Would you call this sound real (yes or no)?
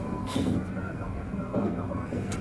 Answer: no